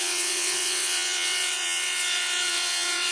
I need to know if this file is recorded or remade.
remade